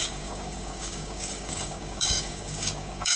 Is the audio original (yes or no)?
no